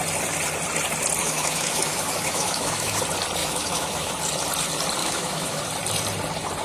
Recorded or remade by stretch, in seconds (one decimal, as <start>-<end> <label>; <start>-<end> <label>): 0.0-1.2 recorded; 1.2-3.0 remade; 3.0-3.4 recorded; 3.4-4.1 remade; 4.1-5.0 recorded; 5.0-5.6 remade; 5.6-6.6 recorded